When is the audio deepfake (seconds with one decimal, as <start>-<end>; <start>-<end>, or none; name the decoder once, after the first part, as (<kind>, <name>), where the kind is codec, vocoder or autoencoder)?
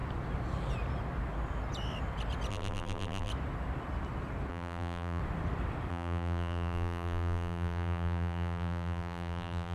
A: 2.5-3.3 (vocoder, BigVGAN v2); 4.5-5.2; 5.9-9.7